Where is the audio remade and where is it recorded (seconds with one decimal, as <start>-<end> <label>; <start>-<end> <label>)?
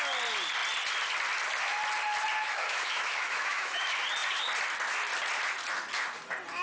0.0-2.4 recorded; 2.4-3.8 remade; 3.8-6.6 recorded